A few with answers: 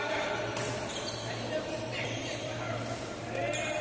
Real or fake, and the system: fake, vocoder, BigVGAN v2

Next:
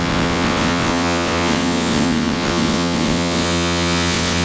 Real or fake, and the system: fake, vocoder, WaveNeXt